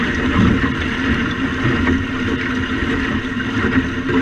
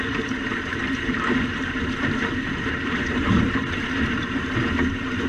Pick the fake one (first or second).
second